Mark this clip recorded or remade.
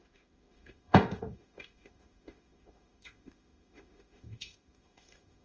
remade